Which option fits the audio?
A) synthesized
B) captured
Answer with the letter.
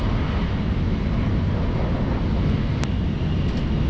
B